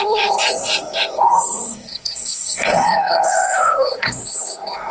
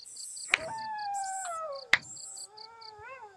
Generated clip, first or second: first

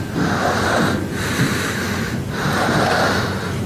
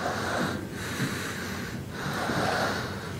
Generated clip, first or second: second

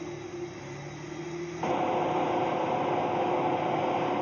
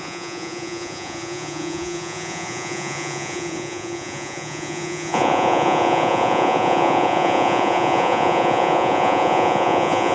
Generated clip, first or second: second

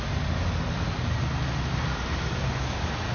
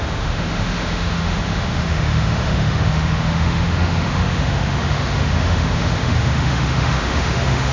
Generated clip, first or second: second